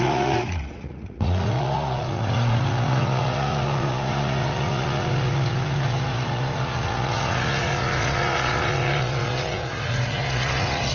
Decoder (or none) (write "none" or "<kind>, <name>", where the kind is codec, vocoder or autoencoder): vocoder, Vocos